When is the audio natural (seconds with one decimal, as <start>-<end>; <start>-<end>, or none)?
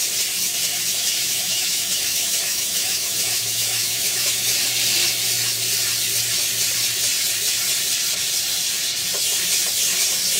0.0-0.7; 4.6-10.4